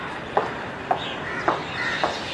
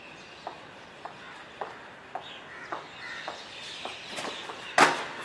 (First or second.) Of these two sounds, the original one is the second